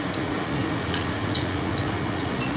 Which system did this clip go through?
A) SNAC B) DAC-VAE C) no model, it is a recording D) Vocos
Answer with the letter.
D